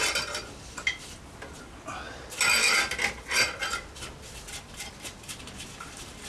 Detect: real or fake real